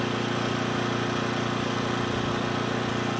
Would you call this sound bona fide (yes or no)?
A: yes